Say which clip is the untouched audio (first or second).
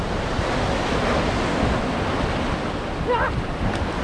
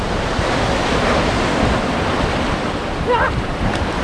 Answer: first